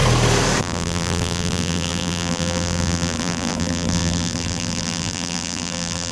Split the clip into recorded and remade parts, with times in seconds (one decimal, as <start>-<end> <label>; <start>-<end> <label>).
0.0-0.6 recorded; 0.6-6.1 remade